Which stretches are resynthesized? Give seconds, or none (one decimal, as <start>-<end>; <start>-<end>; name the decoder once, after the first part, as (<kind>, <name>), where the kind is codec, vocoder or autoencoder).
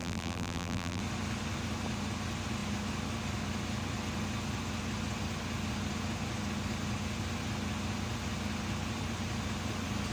0.0-1.0 (vocoder, BigVGAN v2)